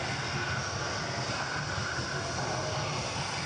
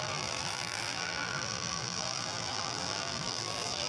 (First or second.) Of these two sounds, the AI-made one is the second